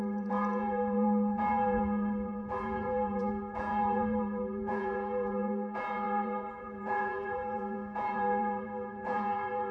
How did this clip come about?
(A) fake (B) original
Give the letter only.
A